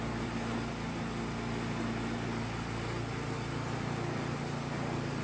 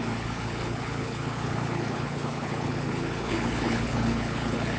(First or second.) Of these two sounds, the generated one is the second